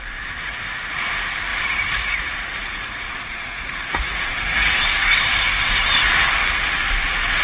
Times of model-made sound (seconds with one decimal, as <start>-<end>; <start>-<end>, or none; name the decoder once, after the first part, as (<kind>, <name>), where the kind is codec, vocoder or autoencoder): 0.4-1.1 (vocoder, Vocos); 1.5-4.8